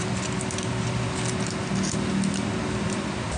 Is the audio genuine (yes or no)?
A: yes